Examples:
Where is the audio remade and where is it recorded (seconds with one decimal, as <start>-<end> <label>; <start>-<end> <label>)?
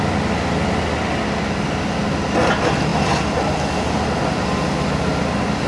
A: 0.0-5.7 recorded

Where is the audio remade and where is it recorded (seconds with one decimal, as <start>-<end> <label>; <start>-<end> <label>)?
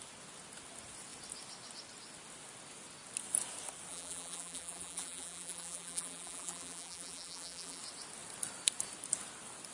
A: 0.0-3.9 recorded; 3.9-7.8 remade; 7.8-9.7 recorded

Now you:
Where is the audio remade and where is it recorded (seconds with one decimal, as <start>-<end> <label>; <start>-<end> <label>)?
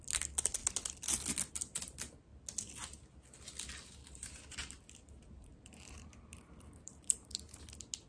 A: 0.0-4.0 recorded; 4.0-7.6 remade; 7.6-8.1 recorded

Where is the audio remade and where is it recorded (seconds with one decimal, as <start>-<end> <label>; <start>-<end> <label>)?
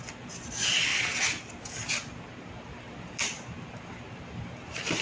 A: 0.0-5.0 recorded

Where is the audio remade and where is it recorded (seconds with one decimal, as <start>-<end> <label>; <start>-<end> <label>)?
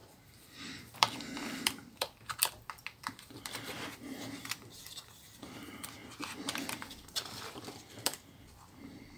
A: 0.0-9.2 remade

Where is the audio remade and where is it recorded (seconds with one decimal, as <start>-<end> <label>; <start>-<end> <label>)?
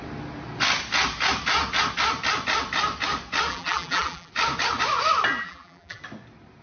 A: 0.0-3.5 recorded; 3.5-4.3 remade; 4.3-5.4 recorded; 5.4-6.0 remade; 6.0-6.6 recorded